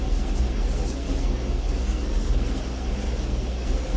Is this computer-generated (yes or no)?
yes